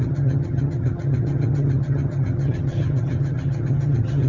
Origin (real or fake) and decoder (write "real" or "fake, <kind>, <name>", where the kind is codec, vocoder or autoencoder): fake, vocoder, HiFi-GAN